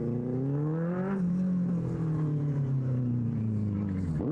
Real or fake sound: real